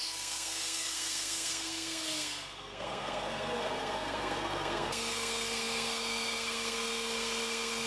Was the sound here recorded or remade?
remade